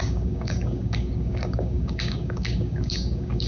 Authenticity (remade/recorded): remade